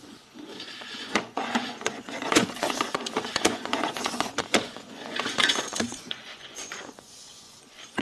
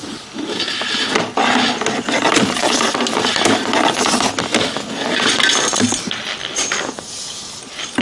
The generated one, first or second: first